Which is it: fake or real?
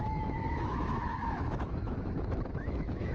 fake